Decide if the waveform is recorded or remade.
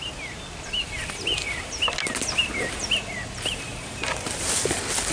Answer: recorded